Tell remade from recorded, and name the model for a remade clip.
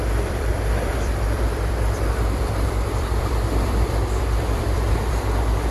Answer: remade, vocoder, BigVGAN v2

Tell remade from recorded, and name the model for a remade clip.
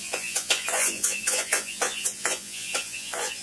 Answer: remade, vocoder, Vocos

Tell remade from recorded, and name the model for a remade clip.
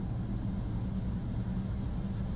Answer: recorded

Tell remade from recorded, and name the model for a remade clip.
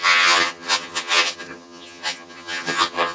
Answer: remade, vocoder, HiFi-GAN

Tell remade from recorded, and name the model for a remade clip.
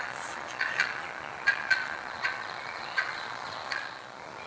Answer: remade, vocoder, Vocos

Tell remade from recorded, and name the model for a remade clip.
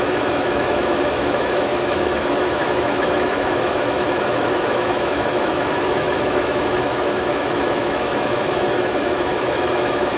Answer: remade, autoencoder, DAC-VAE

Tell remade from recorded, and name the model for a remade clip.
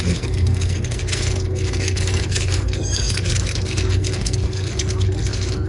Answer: remade, codec, SNAC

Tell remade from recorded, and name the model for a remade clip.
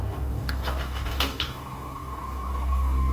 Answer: remade, codec, DAC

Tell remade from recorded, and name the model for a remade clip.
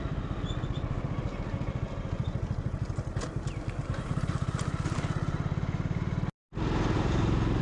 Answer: recorded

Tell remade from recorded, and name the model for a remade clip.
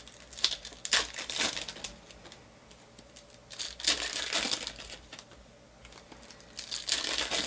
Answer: recorded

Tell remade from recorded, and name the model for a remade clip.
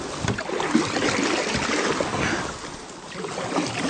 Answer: recorded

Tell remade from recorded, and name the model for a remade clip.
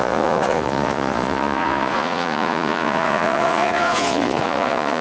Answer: remade, vocoder, Vocos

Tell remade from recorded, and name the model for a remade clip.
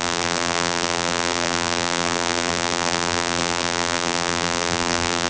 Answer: remade, vocoder, BigVGAN v2